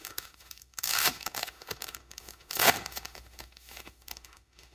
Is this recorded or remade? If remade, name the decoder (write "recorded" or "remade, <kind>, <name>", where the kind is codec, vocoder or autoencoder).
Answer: remade, autoencoder, DAC-VAE